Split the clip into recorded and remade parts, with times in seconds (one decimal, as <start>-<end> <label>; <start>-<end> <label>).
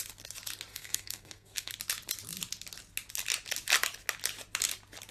0.0-0.7 recorded; 0.7-1.7 remade; 1.7-5.1 recorded